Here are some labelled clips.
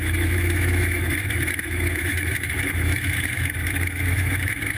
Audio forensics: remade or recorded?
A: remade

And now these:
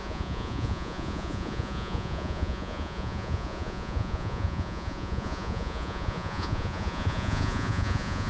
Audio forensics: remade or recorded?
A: remade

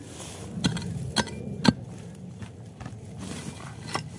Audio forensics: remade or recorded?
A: recorded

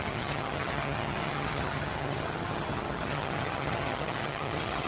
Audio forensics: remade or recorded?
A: remade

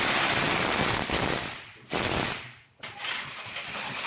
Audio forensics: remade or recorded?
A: recorded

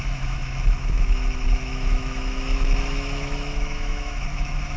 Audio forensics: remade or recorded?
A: remade